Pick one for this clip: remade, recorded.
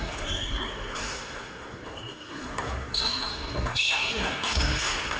remade